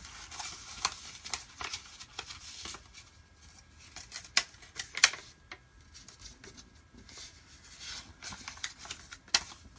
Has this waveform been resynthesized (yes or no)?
no